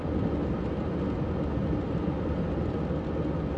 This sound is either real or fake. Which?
real